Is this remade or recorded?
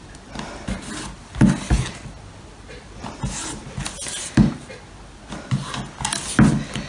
recorded